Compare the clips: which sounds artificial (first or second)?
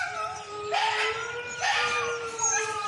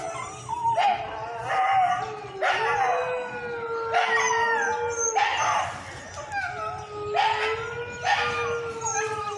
first